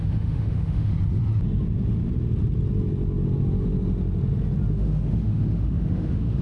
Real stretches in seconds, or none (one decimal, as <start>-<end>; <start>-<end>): 0.9-4.7